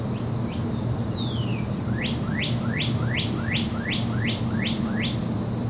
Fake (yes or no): no